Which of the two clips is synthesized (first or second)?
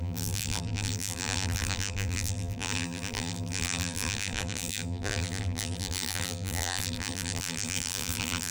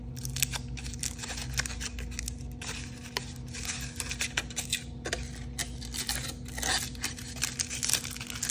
first